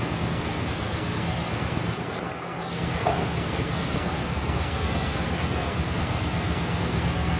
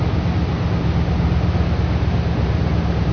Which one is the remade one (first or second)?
first